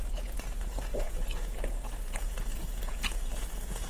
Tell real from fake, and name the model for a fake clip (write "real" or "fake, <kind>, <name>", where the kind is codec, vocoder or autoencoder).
fake, vocoder, Vocos